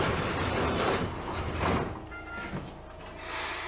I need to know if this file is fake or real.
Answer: real